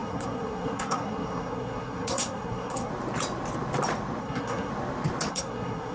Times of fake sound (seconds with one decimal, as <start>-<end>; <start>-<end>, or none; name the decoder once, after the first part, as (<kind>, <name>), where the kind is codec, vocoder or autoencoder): 0.0-2.9 (codec, SNAC); 4.2-4.7; 5.3-5.9